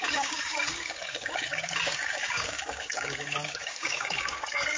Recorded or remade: remade